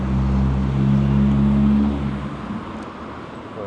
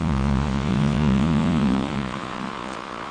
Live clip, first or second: first